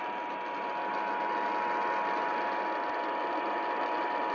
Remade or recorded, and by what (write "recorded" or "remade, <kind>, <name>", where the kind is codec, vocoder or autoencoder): recorded